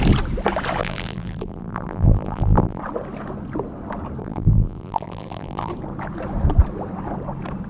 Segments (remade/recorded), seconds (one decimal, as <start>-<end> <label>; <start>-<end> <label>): 0.0-0.8 recorded; 0.8-2.8 remade; 2.8-4.2 recorded; 4.2-5.7 remade; 5.7-7.7 recorded